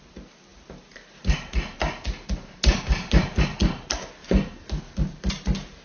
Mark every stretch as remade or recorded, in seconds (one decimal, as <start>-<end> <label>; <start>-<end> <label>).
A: 0.0-5.8 recorded